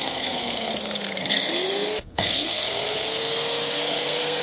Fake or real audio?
fake